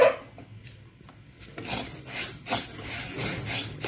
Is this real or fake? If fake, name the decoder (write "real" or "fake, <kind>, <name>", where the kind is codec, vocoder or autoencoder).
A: real